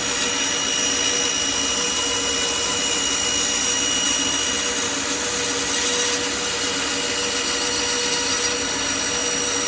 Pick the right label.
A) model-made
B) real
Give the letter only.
B